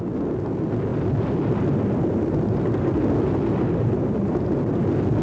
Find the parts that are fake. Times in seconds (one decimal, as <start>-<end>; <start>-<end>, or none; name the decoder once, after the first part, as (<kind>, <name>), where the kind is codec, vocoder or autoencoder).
none